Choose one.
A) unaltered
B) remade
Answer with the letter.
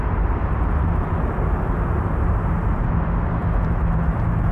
A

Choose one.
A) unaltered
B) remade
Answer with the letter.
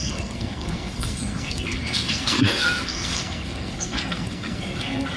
B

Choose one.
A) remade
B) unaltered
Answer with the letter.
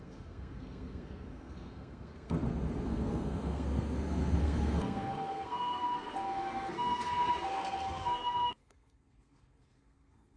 A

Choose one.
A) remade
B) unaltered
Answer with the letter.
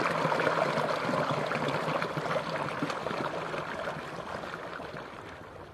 B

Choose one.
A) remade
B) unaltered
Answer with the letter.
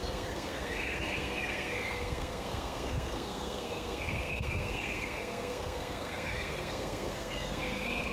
A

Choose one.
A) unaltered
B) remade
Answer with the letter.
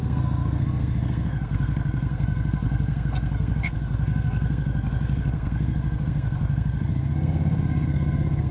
B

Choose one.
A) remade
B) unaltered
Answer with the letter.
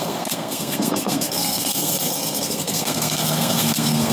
A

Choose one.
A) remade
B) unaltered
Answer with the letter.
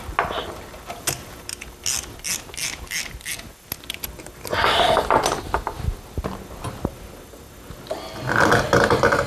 B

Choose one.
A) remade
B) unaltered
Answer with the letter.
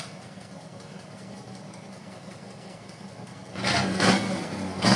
A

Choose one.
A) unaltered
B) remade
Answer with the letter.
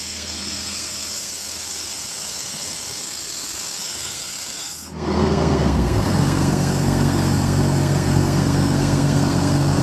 B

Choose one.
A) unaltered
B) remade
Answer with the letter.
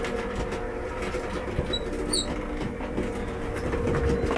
A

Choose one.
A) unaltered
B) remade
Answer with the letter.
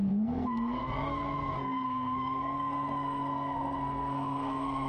B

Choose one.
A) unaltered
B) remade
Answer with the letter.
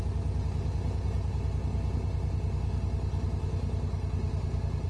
A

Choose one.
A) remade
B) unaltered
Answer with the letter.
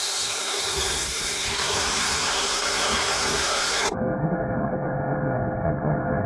A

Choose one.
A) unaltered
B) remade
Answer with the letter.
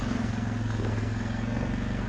B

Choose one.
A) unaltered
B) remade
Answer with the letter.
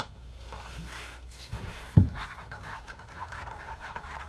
B